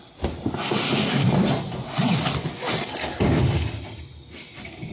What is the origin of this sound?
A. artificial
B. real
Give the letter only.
B